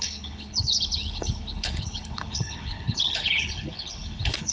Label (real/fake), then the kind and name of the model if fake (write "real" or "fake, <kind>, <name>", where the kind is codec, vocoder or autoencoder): fake, codec, HILCodec